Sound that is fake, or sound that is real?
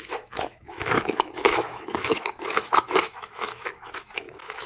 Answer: fake